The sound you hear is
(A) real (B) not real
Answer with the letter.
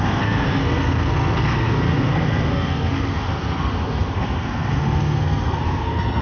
B